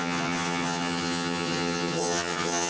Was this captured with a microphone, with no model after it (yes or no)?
no